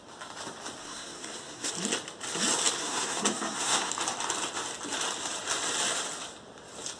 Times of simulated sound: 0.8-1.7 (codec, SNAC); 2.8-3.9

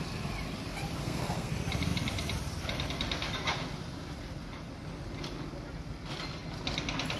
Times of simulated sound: 1.0-1.5 (codec, SNAC)

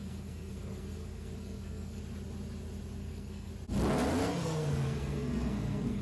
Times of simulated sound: 0.0-2.0 (codec, SNAC); 3.0-3.5; 4.2-6.0

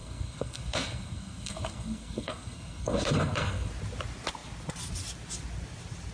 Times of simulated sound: 0.0-3.7 (codec, SNAC)

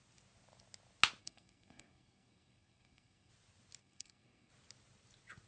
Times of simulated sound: 1.2-3.3 (codec, SNAC); 3.8-4.5

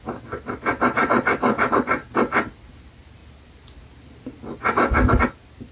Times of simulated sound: none